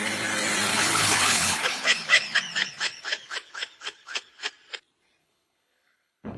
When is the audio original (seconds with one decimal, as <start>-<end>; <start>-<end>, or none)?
0.0-0.7; 4.5-5.2

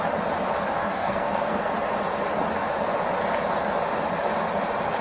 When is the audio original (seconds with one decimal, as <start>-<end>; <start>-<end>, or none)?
0.0-0.8; 1.7-5.0